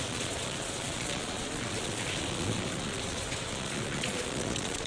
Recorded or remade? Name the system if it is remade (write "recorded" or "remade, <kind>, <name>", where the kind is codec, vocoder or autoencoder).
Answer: remade, vocoder, Vocos